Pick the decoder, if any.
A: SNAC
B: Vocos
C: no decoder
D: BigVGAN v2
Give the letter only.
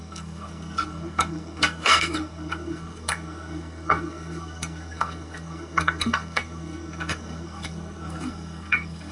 A